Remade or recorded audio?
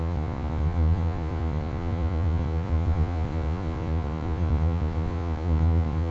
remade